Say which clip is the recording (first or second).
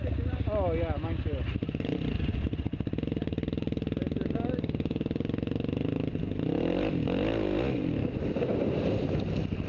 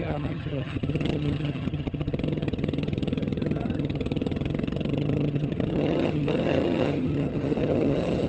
first